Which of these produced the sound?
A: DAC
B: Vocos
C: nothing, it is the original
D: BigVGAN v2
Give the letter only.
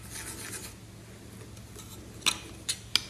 C